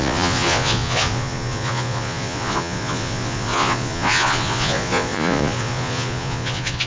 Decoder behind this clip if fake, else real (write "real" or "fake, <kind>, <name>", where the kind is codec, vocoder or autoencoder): fake, vocoder, Vocos